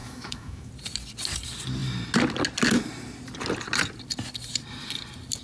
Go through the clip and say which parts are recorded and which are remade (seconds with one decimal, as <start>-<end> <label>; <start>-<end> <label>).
0.0-0.7 remade; 0.7-5.4 recorded